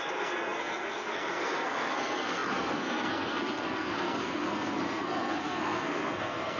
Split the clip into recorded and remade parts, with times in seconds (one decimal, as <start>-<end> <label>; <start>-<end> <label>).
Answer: 0.0-6.6 remade